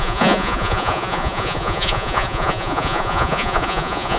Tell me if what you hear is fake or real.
fake